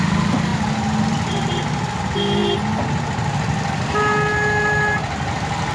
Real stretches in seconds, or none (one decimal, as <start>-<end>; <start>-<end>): 0.0-5.7